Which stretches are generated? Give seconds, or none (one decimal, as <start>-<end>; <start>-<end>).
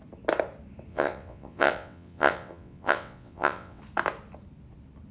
0.9-3.8